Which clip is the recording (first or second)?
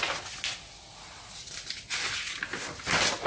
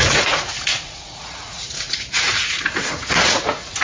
first